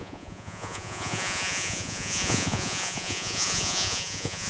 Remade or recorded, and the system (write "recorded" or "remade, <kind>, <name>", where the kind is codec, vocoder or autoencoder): remade, vocoder, Vocos